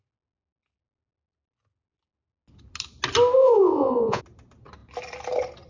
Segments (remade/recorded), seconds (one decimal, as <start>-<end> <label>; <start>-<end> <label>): 0.0-3.4 recorded; 3.4-4.2 remade; 4.2-5.7 recorded